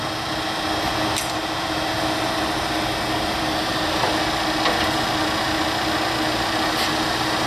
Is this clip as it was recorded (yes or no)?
yes